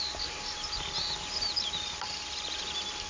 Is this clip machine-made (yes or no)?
no